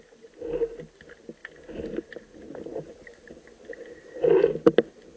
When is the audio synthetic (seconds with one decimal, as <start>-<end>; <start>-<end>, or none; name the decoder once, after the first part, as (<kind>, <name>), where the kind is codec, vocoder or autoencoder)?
none